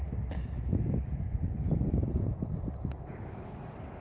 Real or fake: real